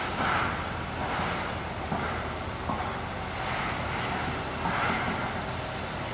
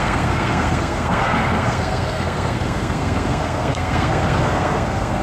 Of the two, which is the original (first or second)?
first